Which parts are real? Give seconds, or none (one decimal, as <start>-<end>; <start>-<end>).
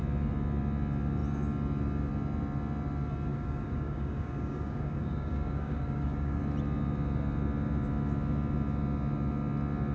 0.0-3.3; 6.4-9.9